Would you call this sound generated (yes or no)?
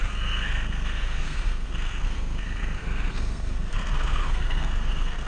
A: yes